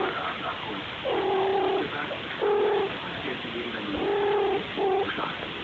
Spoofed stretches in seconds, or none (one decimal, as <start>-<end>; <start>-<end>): none